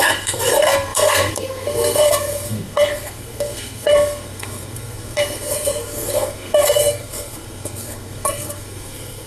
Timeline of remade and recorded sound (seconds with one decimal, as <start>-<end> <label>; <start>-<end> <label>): 0.0-9.3 remade